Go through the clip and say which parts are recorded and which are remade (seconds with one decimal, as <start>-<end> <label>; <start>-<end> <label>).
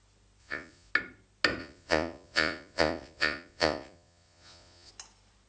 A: 0.0-0.4 recorded; 0.4-0.9 remade; 0.9-1.6 recorded; 1.6-4.9 remade; 4.9-5.5 recorded